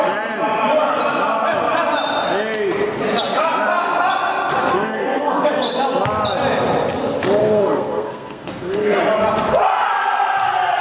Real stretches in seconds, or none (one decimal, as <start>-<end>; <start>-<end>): 0.0-4.6; 5.5-7.4; 9.0-10.8